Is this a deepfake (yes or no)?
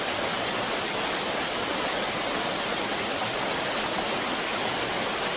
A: no